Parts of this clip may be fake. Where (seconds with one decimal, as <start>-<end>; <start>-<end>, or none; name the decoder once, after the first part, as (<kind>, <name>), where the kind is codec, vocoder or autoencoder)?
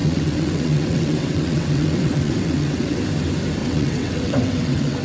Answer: 0.0-3.0 (vocoder, WaveNeXt); 3.6-5.0